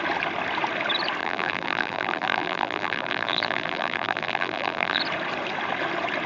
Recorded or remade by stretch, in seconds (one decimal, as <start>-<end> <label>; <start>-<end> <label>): 0.0-1.2 recorded; 1.2-5.0 remade; 5.0-6.3 recorded